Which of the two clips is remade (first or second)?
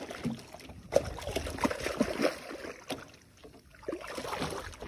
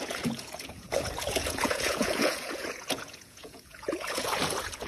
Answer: second